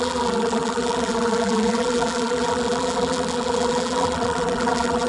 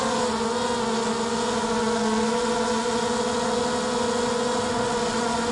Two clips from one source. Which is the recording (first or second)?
second